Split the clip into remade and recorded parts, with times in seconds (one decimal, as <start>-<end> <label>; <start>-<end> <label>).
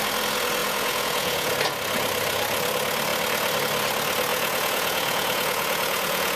0.0-0.6 recorded; 0.6-1.5 remade; 1.5-4.3 recorded; 4.3-6.4 remade